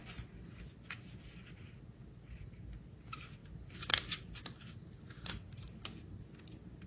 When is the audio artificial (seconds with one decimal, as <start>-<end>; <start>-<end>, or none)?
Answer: none